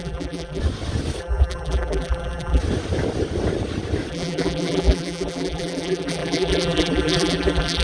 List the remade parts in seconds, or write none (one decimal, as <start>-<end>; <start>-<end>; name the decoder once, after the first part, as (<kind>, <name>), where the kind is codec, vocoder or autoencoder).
0.0-0.6 (vocoder, BigVGAN v2); 1.2-2.6; 4.1-7.8